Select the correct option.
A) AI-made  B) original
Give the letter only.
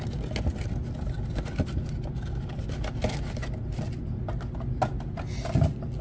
B